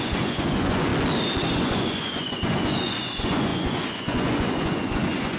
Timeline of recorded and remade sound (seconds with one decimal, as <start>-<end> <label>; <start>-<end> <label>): 0.0-0.9 remade; 0.9-1.5 recorded; 1.5-5.4 remade